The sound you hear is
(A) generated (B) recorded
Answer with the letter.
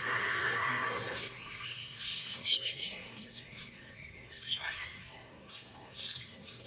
A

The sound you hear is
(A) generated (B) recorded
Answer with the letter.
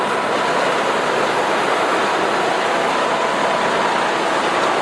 B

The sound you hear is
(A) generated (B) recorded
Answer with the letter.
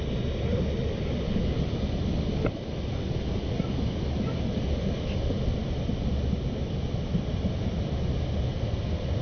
B